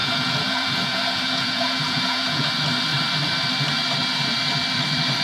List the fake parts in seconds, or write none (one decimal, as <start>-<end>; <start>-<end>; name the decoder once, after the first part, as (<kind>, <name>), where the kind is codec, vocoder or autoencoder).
0.0-2.5 (vocoder, Vocos)